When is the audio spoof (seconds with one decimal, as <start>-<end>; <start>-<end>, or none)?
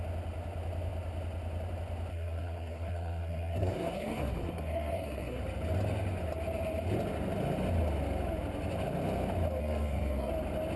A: 2.1-5.4; 9.6-10.3